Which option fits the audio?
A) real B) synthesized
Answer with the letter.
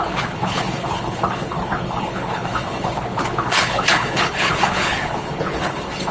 B